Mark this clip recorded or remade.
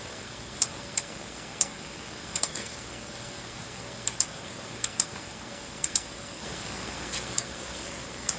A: remade